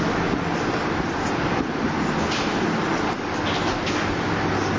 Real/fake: real